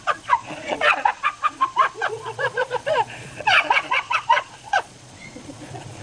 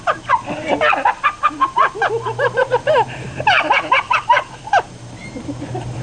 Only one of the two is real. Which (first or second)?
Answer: second